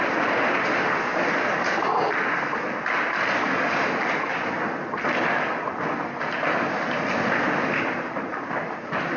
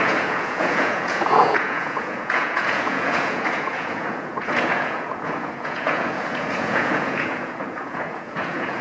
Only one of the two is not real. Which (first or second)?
second